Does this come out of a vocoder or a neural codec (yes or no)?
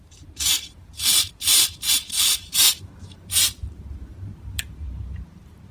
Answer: yes